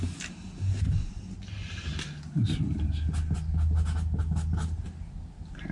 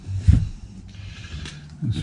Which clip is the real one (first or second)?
first